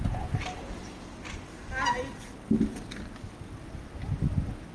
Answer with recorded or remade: recorded